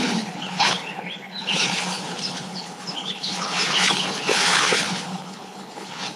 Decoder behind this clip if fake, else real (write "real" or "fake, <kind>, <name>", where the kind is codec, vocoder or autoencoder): fake, codec, HILCodec